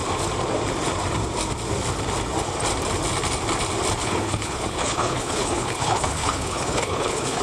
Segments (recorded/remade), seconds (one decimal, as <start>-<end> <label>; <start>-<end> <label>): 0.0-4.0 recorded; 4.0-7.4 remade